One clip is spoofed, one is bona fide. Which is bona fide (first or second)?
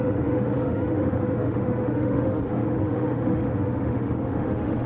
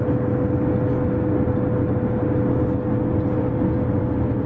second